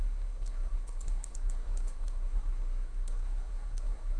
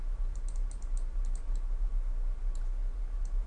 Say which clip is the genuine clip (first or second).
second